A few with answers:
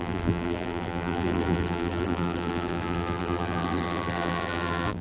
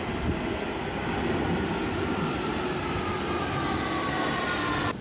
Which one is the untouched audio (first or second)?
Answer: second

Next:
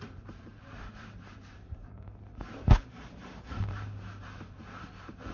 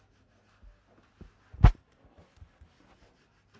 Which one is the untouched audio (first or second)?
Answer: second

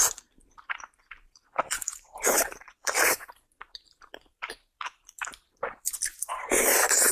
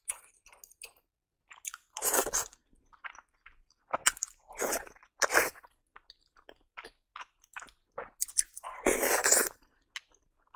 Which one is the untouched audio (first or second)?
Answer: second